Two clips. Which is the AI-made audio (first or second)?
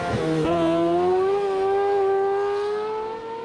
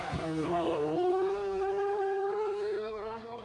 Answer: second